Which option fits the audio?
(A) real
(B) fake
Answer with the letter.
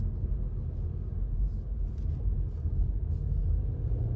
A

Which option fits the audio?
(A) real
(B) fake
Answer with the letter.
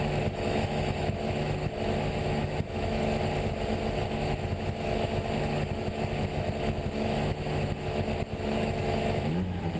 B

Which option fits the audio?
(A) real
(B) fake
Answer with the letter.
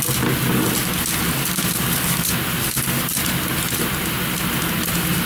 A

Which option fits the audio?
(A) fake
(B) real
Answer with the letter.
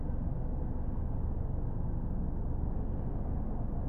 B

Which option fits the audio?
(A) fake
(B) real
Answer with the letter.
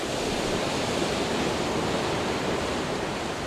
B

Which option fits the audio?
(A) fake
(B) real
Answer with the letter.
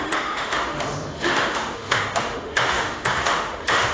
A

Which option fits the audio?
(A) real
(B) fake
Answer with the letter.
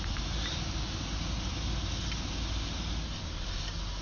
A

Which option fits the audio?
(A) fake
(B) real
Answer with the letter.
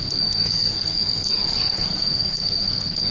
A